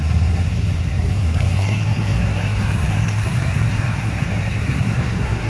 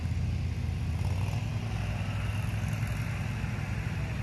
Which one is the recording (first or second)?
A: second